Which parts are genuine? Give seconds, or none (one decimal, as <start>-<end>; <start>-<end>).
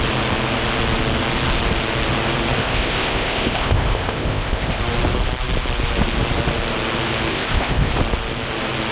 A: 0.0-2.6; 4.8-7.3; 7.9-8.9